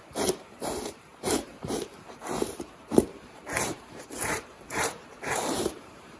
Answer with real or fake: fake